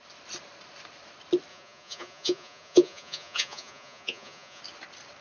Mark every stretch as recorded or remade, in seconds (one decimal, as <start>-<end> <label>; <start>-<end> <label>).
0.0-1.5 recorded; 1.5-4.6 remade; 4.6-5.2 recorded